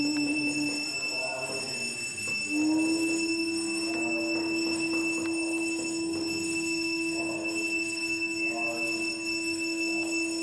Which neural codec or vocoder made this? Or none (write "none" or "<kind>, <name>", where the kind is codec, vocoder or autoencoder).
none